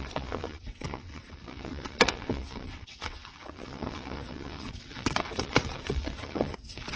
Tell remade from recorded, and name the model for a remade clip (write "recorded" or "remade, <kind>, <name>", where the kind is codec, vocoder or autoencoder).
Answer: remade, vocoder, WaveNeXt